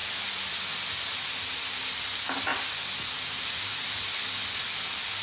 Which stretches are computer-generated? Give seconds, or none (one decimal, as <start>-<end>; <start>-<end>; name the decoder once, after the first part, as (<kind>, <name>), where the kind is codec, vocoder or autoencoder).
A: none